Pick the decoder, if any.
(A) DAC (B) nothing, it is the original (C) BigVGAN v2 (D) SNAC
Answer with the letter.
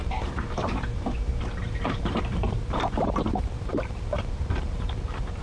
C